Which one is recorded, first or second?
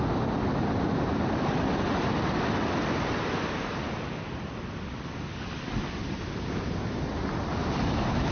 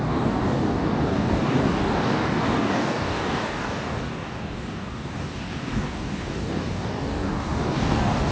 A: first